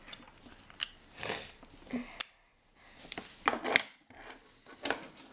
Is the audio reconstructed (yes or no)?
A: no